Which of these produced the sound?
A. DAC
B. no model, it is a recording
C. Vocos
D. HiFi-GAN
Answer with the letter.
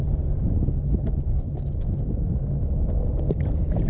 B